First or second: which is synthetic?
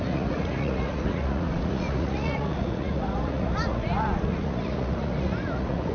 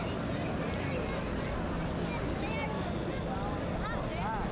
first